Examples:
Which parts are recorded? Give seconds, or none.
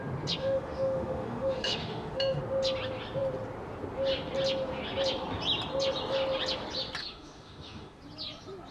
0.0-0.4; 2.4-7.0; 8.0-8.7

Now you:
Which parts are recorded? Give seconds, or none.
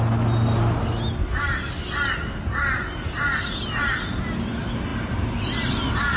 0.0-6.2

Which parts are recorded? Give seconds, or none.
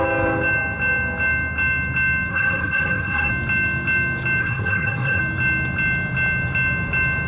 0.0-2.3; 3.3-4.4; 5.2-7.3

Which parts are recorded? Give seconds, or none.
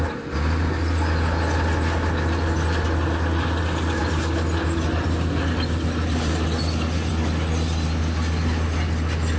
0.0-9.4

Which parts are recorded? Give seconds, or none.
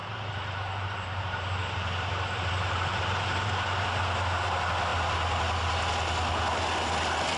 3.9-7.4